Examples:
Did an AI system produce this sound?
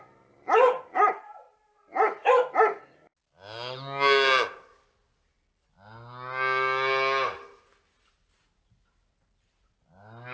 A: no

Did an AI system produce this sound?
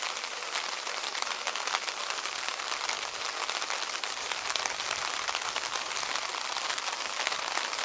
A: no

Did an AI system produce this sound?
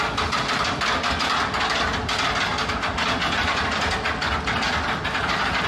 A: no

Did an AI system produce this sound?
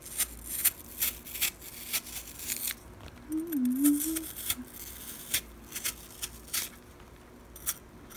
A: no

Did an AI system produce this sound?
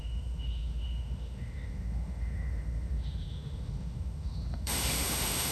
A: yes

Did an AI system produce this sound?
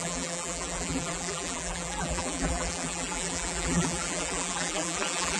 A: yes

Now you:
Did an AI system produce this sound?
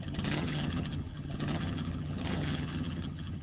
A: yes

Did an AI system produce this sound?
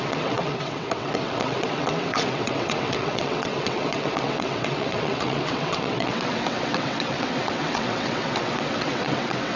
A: yes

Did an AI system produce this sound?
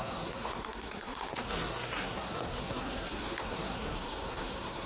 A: yes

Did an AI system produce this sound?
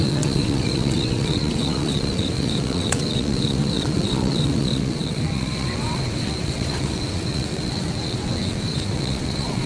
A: yes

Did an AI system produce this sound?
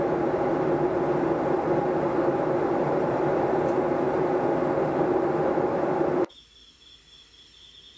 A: no